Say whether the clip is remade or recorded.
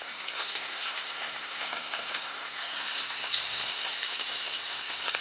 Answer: remade